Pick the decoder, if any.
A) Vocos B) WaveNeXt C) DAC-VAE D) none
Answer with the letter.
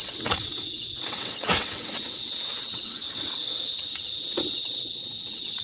B